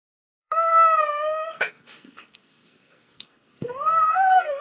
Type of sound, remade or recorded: remade